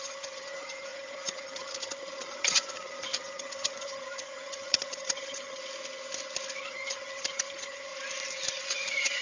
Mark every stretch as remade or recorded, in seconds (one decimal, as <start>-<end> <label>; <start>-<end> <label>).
0.0-5.6 remade; 5.6-6.6 recorded; 6.6-7.9 remade; 7.9-8.6 recorded; 8.6-9.2 remade